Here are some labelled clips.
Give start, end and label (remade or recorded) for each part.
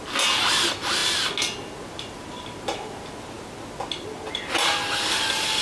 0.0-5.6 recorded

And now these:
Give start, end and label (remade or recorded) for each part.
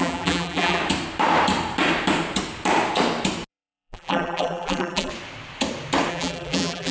0.0-0.8 remade; 0.8-3.5 recorded; 3.5-5.1 remade; 5.1-6.1 recorded; 6.1-6.9 remade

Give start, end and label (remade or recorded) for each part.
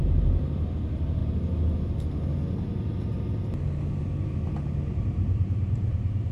0.0-1.2 remade; 1.2-5.0 recorded; 5.0-6.3 remade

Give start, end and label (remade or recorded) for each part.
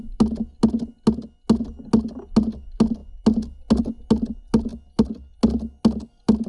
0.0-6.5 recorded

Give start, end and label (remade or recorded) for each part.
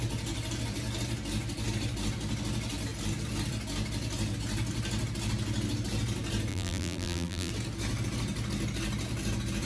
0.0-6.5 recorded; 6.5-7.5 remade; 7.5-9.7 recorded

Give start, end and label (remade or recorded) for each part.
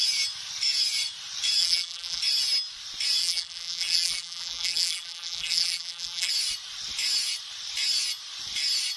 0.0-1.6 recorded; 1.6-2.2 remade; 2.2-3.2 recorded; 3.2-6.3 remade; 6.3-9.0 recorded